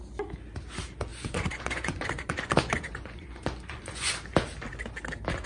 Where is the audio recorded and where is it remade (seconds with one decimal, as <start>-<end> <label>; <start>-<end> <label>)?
0.0-1.1 recorded; 1.1-4.1 remade; 4.1-5.5 recorded